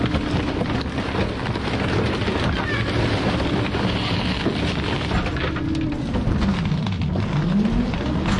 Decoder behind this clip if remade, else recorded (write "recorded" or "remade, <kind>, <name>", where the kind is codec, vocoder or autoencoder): recorded